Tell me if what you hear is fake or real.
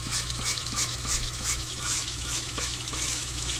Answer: fake